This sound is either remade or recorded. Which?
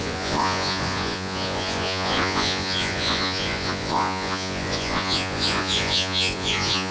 remade